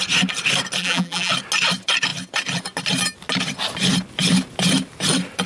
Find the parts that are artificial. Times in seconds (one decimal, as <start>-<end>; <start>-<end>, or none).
0.8-1.3